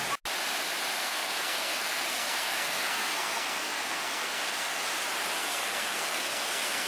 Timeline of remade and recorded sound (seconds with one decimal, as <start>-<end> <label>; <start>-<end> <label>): 0.0-1.0 recorded; 1.0-4.8 remade; 4.8-5.4 recorded; 5.4-6.9 remade